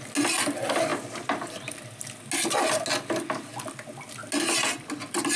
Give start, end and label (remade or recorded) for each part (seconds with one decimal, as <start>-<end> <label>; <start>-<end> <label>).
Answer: 0.0-5.4 recorded